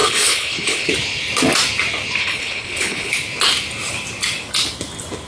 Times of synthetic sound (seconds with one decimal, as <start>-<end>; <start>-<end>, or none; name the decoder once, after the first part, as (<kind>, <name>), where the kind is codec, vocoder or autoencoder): 0.0-0.9 (codec, HILCodec); 2.2-3.1